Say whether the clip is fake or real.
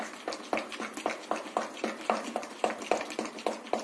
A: real